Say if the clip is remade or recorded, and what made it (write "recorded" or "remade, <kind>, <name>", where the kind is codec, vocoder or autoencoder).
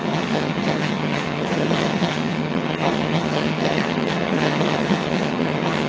remade, vocoder, HiFi-GAN